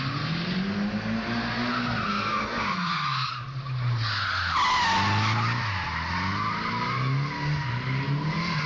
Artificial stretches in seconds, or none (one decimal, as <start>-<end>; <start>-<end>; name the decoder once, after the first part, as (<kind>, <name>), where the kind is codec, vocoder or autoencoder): 2.1-3.3 (codec, SNAC)

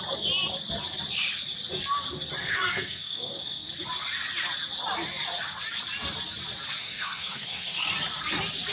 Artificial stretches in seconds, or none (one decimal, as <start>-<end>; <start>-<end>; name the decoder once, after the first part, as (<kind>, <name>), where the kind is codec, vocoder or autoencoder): 2.4-3.7 (codec, SNAC); 6.8-7.9

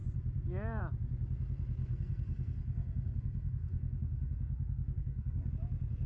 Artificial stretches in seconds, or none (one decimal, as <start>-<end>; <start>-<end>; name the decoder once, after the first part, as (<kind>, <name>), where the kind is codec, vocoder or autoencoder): 1.8-5.5 (codec, SNAC)

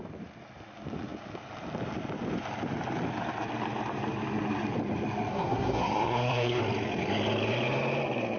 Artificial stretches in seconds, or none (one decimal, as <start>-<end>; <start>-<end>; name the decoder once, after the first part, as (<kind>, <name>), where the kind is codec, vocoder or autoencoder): 5.3-6.6 (codec, SNAC)

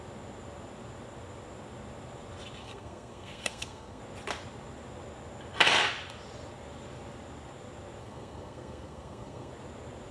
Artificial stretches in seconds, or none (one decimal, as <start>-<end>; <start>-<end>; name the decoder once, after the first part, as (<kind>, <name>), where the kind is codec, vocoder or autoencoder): 2.6-4.0 (codec, SNAC); 8.0-9.5